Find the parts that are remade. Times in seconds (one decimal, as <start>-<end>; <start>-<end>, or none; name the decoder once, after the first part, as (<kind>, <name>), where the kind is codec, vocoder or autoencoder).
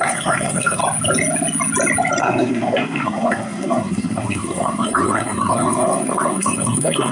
0.0-0.8 (codec, SNAC); 2.2-7.1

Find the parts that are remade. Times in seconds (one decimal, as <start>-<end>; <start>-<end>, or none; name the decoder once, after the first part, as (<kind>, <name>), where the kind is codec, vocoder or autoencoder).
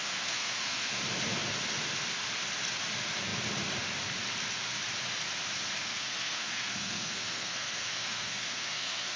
0.0-1.0 (codec, SNAC); 5.8-9.2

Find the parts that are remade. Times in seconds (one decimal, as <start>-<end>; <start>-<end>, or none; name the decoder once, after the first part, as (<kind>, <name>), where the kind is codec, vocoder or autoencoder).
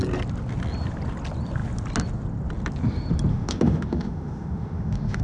3.3-5.2 (autoencoder, DAC-VAE)